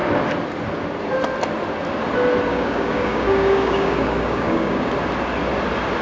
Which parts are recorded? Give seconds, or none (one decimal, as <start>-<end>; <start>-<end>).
0.0-2.5; 4.9-6.0